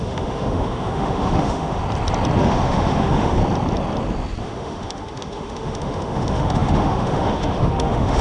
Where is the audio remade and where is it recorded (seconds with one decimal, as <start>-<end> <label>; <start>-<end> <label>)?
0.0-1.8 remade; 1.8-2.4 recorded; 2.4-3.4 remade; 3.4-4.4 recorded; 4.4-8.2 remade